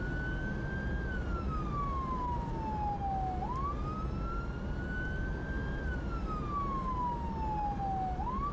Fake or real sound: real